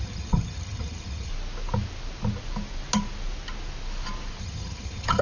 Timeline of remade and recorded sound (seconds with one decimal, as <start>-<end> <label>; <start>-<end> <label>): 0.0-1.3 remade; 1.3-4.4 recorded; 4.4-5.2 remade